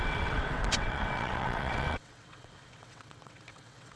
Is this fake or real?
fake